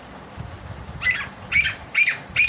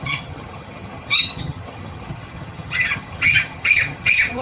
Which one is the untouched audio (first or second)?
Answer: first